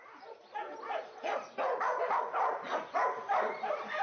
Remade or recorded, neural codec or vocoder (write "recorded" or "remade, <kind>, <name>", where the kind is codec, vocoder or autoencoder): recorded